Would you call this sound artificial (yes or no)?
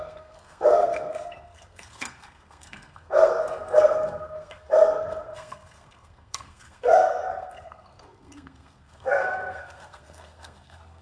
yes